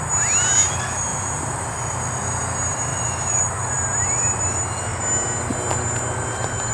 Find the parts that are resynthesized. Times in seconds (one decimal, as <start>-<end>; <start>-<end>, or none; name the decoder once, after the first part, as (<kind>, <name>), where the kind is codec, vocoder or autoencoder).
1.1-2.0 (vocoder, BigVGAN v2); 2.9-4.4